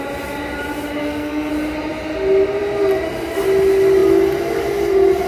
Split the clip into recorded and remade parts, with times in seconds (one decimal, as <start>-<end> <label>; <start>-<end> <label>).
0.0-1.0 recorded; 1.0-1.5 remade; 1.5-5.3 recorded

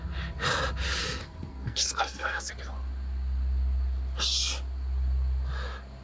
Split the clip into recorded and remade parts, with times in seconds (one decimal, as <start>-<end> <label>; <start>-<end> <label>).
0.0-1.0 recorded; 1.0-2.5 remade; 2.5-6.0 recorded

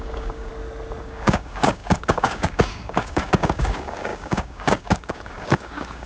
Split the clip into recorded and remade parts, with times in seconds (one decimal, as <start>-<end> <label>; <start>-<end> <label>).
0.0-0.5 remade; 0.5-1.0 recorded; 1.0-6.1 remade

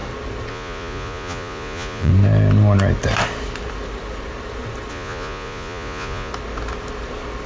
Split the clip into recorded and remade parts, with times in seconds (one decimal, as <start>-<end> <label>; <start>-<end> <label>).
0.0-0.5 recorded; 0.5-2.1 remade; 2.1-4.9 recorded; 4.9-6.3 remade; 6.3-7.5 recorded

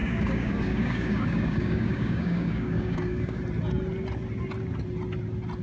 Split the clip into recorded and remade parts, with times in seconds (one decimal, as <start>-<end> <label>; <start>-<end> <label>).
0.0-3.4 remade; 3.4-5.6 recorded